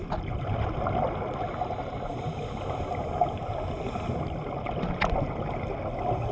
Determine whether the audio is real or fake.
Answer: real